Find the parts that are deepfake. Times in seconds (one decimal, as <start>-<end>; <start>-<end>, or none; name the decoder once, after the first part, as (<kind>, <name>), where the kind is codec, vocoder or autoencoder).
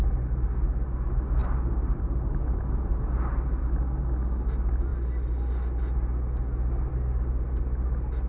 1.4-3.0 (vocoder, BigVGAN v2)